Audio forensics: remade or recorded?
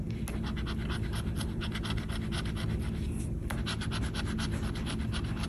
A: recorded